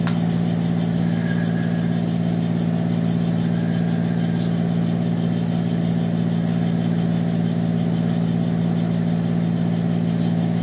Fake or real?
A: real